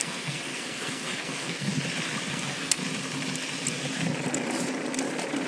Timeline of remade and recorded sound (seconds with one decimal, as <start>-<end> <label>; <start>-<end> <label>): 0.0-1.7 remade; 1.7-2.3 recorded; 2.3-2.8 remade; 2.8-5.5 recorded